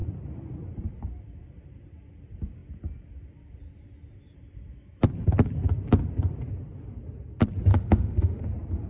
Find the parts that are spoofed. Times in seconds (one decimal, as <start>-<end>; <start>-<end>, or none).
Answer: 7.7-8.4